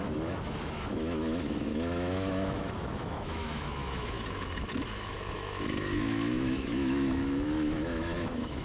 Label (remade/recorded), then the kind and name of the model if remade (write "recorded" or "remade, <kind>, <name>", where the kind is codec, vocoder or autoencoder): remade, autoencoder, DAC-VAE